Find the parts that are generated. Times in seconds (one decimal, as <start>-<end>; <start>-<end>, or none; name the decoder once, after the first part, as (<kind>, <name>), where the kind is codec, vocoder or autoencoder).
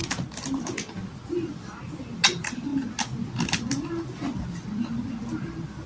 none